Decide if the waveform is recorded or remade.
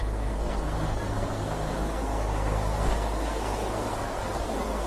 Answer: remade